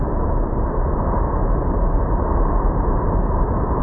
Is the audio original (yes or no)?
yes